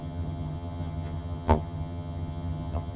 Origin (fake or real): fake